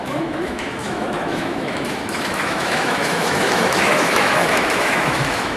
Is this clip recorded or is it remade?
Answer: remade